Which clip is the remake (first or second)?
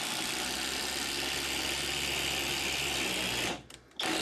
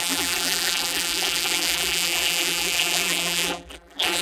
second